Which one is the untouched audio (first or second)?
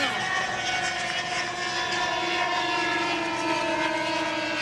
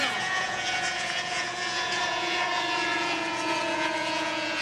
first